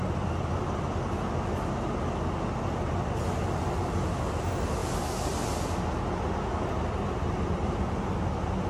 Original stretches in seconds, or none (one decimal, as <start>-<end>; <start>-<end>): 0.0-8.7